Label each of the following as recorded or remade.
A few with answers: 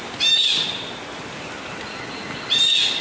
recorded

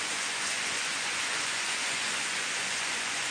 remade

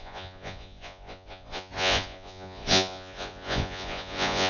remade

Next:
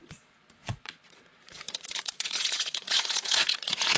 remade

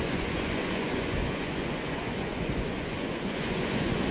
remade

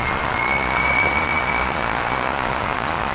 remade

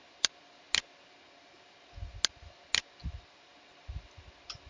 recorded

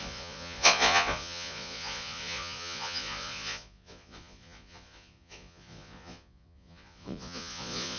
remade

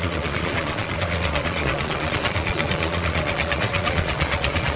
remade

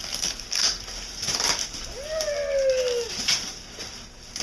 recorded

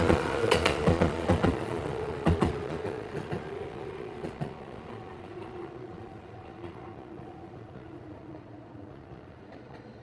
remade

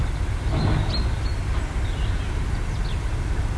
recorded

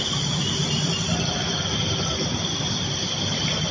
recorded